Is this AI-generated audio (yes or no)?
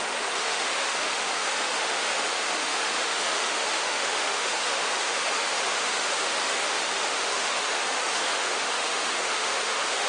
yes